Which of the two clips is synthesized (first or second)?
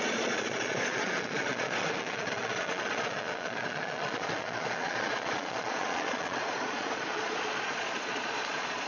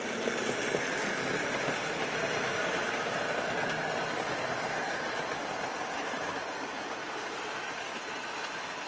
first